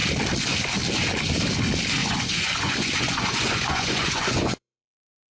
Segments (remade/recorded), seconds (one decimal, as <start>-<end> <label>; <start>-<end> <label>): 0.0-2.0 recorded; 2.0-5.3 remade